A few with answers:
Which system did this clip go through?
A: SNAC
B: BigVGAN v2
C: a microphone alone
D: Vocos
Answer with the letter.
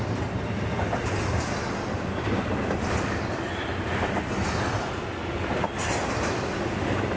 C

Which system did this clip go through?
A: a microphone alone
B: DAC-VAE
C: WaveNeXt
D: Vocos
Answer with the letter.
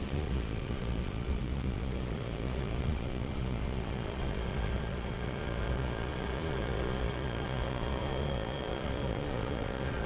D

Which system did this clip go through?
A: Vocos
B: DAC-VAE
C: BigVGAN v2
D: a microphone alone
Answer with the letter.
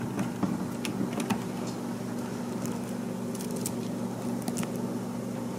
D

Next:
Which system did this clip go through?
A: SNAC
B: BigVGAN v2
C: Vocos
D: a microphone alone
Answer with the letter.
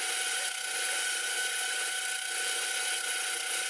C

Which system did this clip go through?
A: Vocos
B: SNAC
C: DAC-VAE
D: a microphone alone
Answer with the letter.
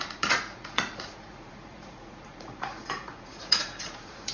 A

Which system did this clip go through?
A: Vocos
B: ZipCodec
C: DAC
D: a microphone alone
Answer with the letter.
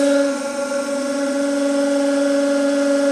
A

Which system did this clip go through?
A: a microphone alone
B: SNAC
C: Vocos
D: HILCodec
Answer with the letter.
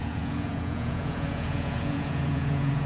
C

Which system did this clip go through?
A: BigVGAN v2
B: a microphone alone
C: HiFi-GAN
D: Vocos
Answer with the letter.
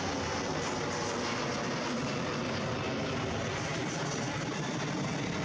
B